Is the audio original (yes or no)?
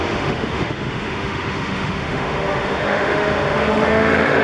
no